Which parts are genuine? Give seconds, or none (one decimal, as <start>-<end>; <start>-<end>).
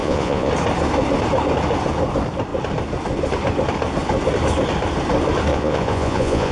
0.5-5.5